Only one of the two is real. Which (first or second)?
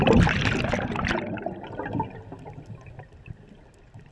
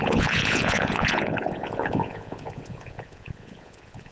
first